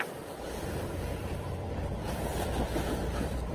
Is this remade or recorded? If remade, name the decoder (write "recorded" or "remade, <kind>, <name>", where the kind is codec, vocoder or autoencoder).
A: remade, vocoder, BigVGAN v2